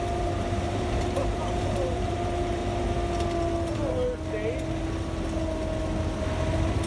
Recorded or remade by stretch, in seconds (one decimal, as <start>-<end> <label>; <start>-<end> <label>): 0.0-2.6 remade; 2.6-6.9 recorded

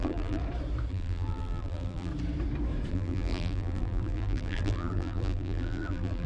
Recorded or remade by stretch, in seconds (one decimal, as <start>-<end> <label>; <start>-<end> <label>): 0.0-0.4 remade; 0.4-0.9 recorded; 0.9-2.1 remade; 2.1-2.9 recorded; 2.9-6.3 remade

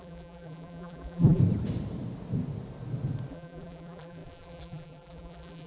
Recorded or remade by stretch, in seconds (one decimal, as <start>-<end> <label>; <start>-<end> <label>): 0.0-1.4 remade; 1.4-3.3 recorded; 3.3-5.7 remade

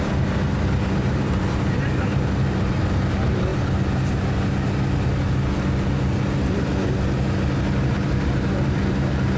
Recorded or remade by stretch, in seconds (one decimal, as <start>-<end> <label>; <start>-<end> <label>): 0.0-3.5 remade; 3.5-6.2 recorded; 6.2-6.7 remade; 6.7-7.9 recorded; 7.9-9.4 remade

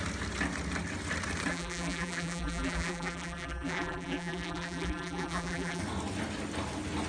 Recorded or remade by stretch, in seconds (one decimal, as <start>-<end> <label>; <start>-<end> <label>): 0.0-1.5 recorded; 1.5-5.8 remade; 5.8-7.1 recorded

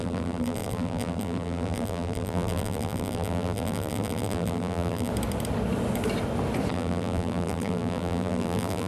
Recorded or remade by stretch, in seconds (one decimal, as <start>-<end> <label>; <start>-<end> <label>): 0.0-5.1 remade; 5.1-6.7 recorded; 6.7-8.9 remade

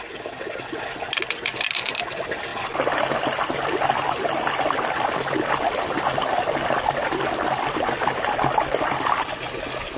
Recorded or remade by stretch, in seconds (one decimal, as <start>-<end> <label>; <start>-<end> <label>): 0.0-10.0 recorded

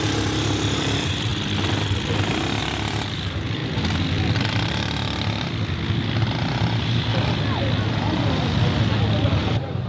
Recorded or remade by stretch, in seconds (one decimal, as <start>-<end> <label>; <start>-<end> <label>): 0.0-1.3 remade; 1.3-2.6 recorded; 2.6-3.6 remade; 3.6-6.3 recorded; 6.3-7.1 remade; 7.1-9.3 recorded; 9.3-9.9 remade